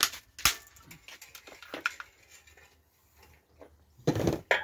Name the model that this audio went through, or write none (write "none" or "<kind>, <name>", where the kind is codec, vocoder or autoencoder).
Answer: none